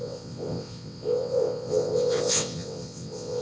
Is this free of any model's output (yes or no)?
no